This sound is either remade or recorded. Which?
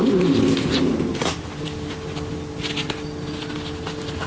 recorded